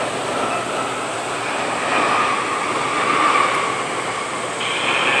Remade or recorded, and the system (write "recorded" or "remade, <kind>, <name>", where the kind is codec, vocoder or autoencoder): recorded